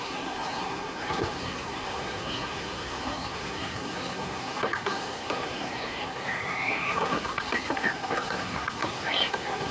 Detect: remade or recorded remade